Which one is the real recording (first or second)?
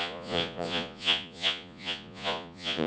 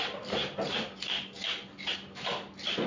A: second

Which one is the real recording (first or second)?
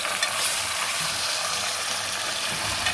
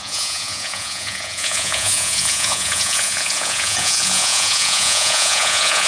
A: first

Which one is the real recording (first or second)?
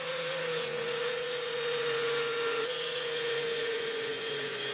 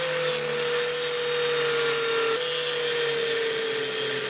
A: second